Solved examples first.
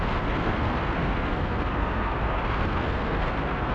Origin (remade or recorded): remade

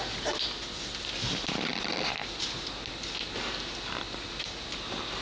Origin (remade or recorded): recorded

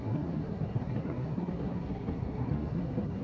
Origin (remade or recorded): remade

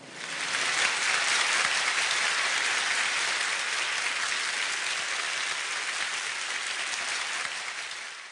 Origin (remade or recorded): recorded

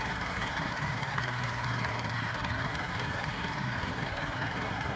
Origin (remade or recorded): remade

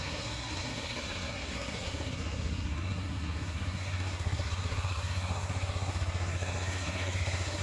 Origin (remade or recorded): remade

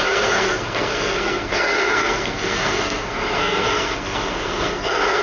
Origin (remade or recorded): remade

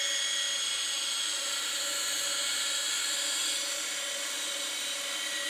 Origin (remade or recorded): recorded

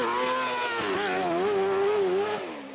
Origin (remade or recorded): recorded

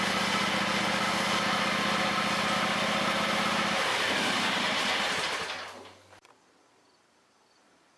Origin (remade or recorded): recorded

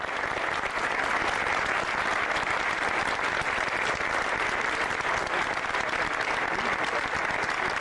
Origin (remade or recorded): recorded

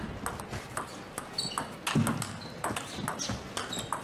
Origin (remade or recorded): recorded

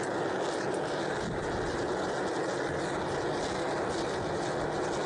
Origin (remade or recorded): recorded